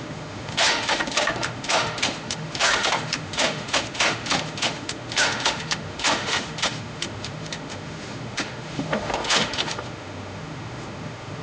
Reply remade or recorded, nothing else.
remade